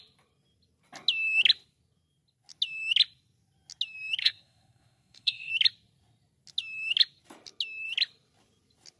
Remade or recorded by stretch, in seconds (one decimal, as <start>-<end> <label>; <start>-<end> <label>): 0.0-4.2 recorded; 4.2-5.5 remade; 5.5-9.0 recorded